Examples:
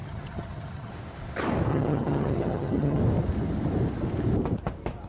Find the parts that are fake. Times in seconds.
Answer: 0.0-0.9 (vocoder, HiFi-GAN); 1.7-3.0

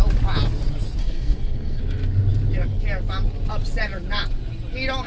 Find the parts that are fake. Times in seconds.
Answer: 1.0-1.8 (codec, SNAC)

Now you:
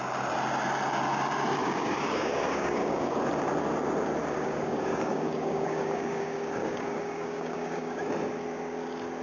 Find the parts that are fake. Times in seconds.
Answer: 1.6-3.2 (codec, DAC); 4.2-8.1

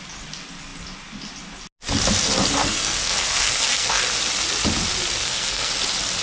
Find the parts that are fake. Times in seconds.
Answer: 2.6-4.0 (codec, SNAC); 5.2-5.7